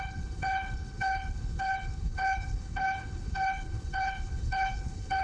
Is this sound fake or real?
fake